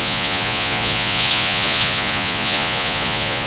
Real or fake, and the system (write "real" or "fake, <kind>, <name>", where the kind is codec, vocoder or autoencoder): fake, vocoder, Vocos